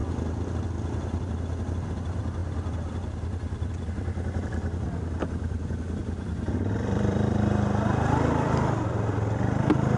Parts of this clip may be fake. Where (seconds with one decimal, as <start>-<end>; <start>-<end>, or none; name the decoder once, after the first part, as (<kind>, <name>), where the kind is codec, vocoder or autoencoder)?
1.2-6.0 (vocoder, BigVGAN v2); 6.5-10.0

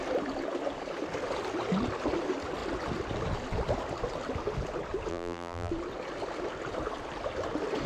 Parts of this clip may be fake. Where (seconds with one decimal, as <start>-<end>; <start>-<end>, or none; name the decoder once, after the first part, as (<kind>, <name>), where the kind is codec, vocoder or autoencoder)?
5.1-5.7 (vocoder, BigVGAN v2)

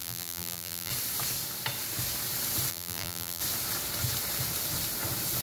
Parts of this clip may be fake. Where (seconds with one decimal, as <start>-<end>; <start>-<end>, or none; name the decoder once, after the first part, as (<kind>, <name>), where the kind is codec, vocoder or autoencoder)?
0.0-0.9 (vocoder, BigVGAN v2); 2.7-3.4

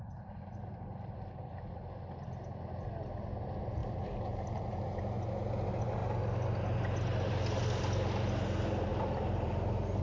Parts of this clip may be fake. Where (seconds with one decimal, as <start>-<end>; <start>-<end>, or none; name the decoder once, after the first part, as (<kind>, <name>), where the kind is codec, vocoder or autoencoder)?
3.8-4.8 (vocoder, BigVGAN v2); 8.9-10.0

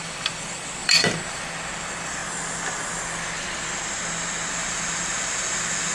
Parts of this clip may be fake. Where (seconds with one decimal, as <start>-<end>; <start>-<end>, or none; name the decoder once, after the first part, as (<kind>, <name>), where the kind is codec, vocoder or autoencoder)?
0.0-2.2 (vocoder, BigVGAN v2); 4.5-5.9

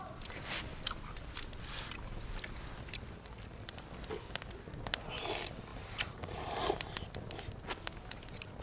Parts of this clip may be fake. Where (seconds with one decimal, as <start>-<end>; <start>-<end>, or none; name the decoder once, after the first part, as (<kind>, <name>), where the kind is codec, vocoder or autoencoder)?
5.7-6.5 (vocoder, BigVGAN v2)

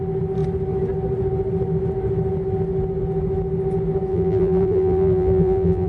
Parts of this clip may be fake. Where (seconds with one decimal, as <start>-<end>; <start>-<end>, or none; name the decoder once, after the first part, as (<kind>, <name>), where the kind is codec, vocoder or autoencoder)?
4.1-5.9 (vocoder, BigVGAN v2)

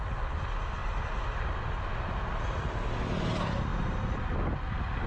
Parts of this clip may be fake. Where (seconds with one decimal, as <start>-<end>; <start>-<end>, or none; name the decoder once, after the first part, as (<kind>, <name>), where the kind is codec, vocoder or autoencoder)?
none